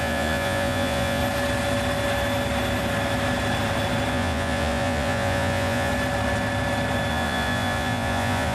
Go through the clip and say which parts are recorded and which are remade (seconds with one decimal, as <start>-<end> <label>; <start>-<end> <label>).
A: 0.0-1.2 remade; 1.2-4.1 recorded; 4.1-5.9 remade; 5.9-7.1 recorded; 7.1-8.5 remade